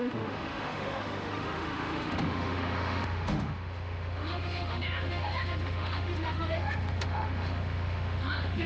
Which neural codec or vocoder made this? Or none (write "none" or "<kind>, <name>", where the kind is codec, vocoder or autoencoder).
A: autoencoder, DAC-VAE